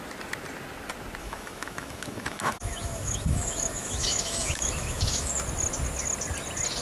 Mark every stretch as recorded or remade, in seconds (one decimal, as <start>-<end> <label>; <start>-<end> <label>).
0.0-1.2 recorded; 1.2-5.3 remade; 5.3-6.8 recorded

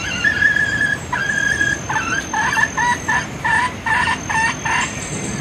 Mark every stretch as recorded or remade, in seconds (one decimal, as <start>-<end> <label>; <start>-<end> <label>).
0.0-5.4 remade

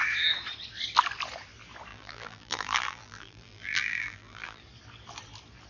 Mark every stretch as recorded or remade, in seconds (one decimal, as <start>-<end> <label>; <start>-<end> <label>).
0.0-1.9 recorded; 1.9-4.6 remade; 4.6-5.7 recorded

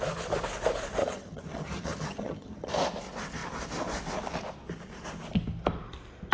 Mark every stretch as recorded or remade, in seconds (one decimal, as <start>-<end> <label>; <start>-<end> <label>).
0.0-1.0 recorded; 1.0-2.7 remade; 2.7-6.3 recorded